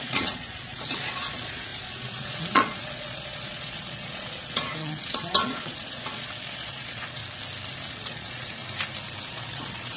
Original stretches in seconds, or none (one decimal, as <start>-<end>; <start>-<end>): 7.2-7.9; 8.6-9.3